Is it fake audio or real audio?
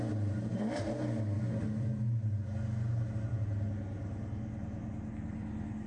real